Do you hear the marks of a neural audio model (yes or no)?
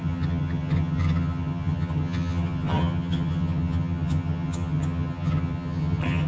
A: yes